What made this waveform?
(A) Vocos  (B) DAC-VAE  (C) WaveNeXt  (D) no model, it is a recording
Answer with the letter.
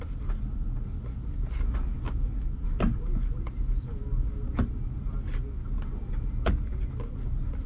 D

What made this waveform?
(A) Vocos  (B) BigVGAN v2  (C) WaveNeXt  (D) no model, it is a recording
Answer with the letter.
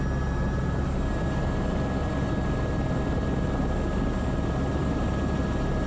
D